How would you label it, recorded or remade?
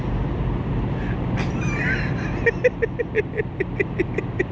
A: recorded